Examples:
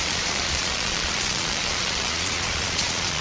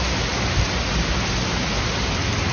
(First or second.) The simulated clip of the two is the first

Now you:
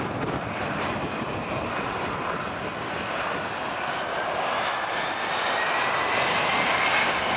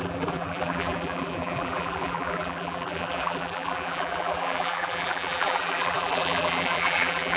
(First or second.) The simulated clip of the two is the second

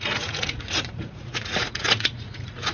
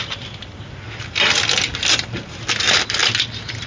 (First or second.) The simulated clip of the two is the first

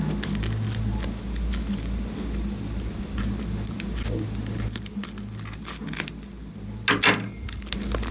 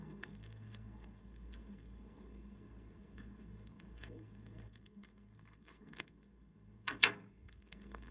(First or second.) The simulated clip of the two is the second